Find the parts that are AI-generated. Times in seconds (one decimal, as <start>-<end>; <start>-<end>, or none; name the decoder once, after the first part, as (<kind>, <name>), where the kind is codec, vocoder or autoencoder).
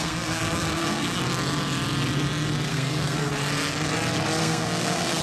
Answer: 0.0-1.2 (codec, SNAC); 2.7-3.3; 4.4-5.2